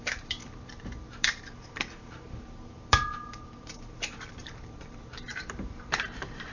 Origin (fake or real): fake